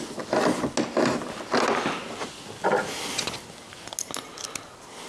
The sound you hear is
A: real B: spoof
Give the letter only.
A